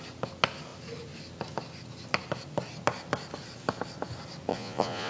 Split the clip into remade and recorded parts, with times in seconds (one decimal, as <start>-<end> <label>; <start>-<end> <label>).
0.0-4.5 recorded; 4.5-5.1 remade